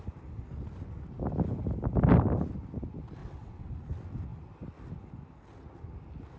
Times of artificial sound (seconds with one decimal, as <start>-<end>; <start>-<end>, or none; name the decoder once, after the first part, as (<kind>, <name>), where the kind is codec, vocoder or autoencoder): 3.2-3.7 (vocoder, WaveNeXt)